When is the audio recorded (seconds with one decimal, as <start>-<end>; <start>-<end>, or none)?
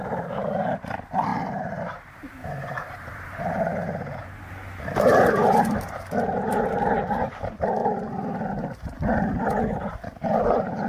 6.5-7.1